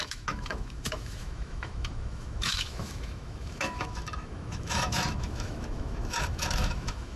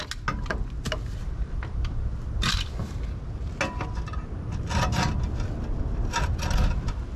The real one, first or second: second